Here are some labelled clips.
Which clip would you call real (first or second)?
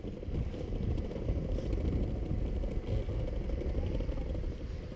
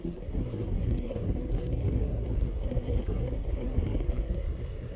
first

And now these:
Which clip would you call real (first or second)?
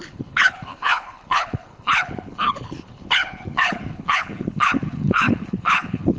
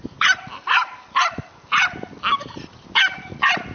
second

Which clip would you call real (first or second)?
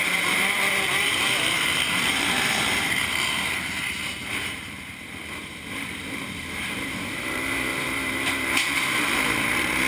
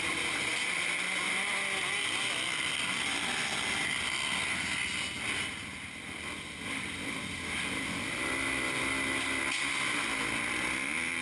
second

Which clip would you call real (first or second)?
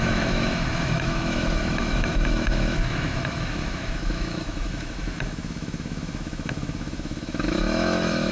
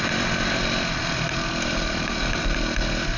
second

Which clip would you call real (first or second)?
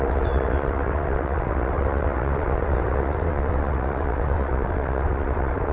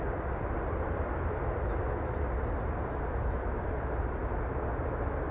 second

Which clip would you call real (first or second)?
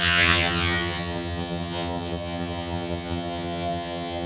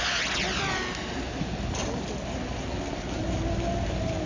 second